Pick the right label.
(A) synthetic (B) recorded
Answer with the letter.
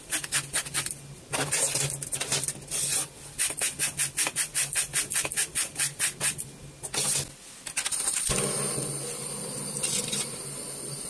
B